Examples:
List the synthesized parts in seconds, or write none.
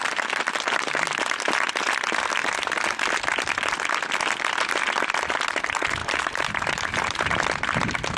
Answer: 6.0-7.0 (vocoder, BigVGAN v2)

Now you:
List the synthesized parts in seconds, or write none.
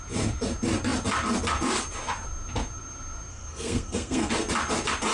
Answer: 3.3-4.3 (codec, SNAC)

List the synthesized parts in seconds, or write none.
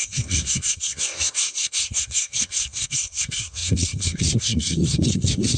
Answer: 0.0-5.6 (codec, SNAC)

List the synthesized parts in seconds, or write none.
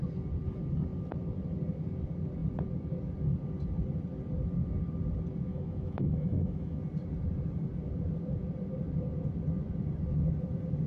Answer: 5.5-6.8 (autoencoder, DAC-VAE)